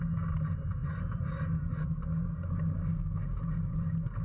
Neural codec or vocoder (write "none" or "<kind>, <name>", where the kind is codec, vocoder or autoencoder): none